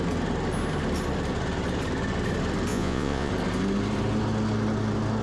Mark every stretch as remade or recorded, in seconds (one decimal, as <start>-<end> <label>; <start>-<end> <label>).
0.0-2.7 recorded; 2.7-3.3 remade; 3.3-5.2 recorded

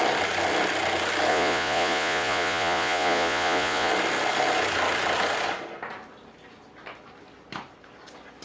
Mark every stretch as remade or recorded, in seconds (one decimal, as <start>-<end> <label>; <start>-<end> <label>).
0.0-1.3 recorded; 1.3-3.9 remade; 3.9-8.4 recorded